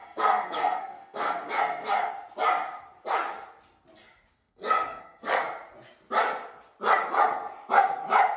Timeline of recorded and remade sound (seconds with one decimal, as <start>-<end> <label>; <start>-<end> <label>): 0.0-2.1 remade; 2.1-4.3 recorded; 4.3-5.4 remade; 5.4-8.4 recorded